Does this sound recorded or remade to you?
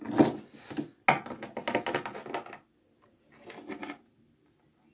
recorded